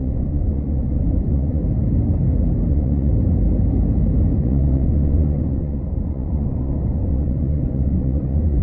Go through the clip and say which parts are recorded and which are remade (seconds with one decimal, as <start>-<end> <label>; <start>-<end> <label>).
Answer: 0.0-1.6 remade; 1.6-2.7 recorded; 2.7-3.1 remade; 3.1-4.4 recorded; 4.4-8.6 remade